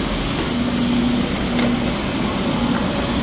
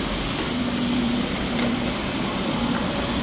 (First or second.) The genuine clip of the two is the first